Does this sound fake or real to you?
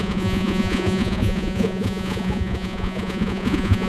fake